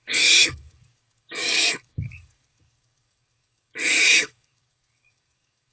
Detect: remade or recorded remade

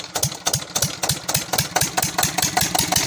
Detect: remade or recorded recorded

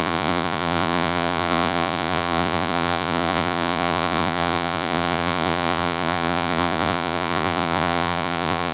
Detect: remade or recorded remade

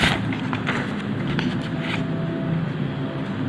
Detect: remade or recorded recorded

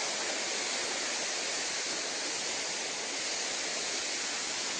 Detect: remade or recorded recorded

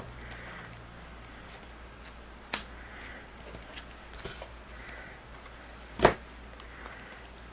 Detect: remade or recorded recorded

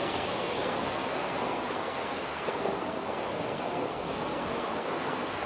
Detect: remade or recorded remade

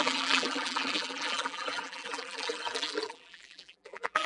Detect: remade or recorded remade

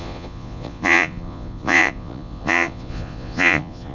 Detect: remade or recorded remade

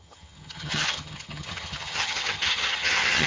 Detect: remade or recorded remade